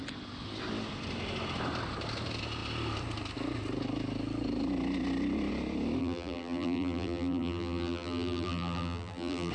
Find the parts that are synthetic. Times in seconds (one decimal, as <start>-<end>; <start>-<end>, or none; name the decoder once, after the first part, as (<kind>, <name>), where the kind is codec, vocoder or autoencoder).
6.0-9.5 (vocoder, BigVGAN v2)